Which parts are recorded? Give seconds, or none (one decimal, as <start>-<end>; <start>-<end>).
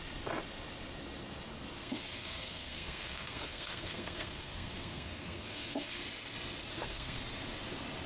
0.0-1.8; 6.0-6.7; 7.2-8.1